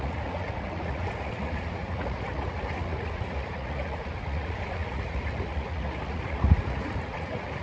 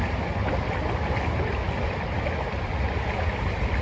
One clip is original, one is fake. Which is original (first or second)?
second